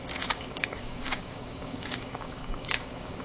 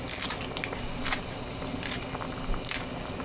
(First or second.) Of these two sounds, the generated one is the first